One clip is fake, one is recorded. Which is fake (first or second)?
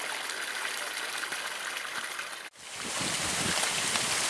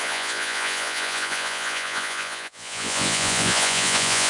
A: second